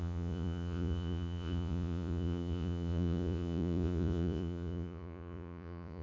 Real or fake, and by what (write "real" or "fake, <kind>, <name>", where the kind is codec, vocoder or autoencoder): fake, vocoder, Vocos